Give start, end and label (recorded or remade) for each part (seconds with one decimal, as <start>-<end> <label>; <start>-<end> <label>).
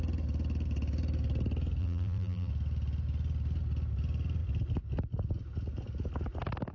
0.0-1.8 recorded; 1.8-2.5 remade; 2.5-6.7 recorded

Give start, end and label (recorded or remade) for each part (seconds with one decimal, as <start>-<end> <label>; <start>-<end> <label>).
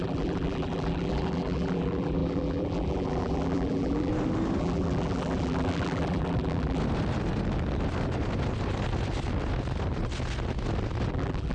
0.0-4.1 remade; 4.1-4.6 recorded; 4.6-6.8 remade; 6.8-11.1 recorded; 11.1-11.5 remade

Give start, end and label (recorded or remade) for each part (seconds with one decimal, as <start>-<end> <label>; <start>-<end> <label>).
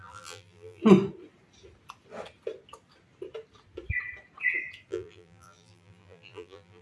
0.0-0.8 remade; 0.8-4.9 recorded; 4.9-6.8 remade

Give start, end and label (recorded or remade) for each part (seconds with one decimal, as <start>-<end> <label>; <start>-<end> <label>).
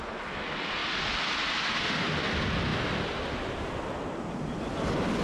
0.0-5.2 recorded